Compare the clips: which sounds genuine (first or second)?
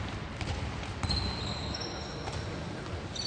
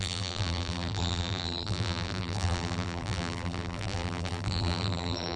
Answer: first